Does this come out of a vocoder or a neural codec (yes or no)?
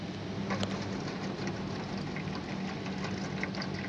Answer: no